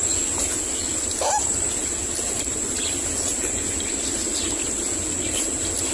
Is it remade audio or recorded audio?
recorded